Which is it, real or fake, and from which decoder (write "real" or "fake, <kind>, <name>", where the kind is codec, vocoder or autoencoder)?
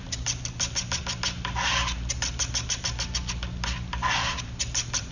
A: real